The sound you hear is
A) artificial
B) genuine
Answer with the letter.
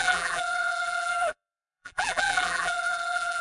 A